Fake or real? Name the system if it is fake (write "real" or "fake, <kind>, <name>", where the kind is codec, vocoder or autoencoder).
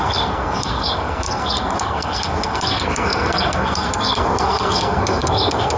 fake, codec, SNAC